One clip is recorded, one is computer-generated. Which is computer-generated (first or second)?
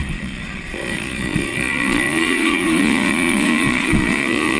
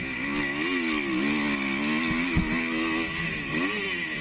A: first